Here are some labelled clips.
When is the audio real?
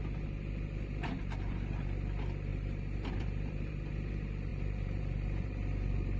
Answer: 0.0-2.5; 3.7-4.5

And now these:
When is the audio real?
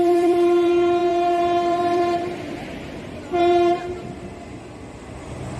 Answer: 3.8-5.6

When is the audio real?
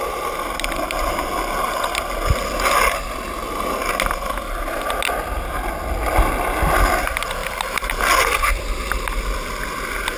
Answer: 0.0-7.4; 8.0-10.2